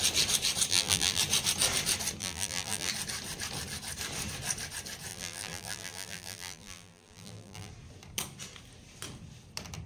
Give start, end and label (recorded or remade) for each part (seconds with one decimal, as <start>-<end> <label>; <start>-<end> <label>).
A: 0.0-0.7 recorded; 0.7-1.2 remade; 1.2-2.2 recorded; 2.2-2.9 remade; 2.9-5.1 recorded; 5.1-7.7 remade; 7.7-9.9 recorded